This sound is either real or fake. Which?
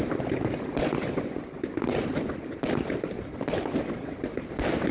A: real